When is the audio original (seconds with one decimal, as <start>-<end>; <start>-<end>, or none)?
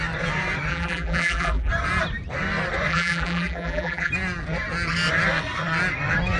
0.0-0.7; 1.7-2.9; 4.1-6.4